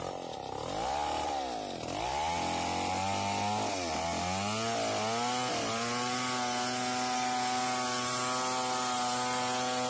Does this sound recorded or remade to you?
recorded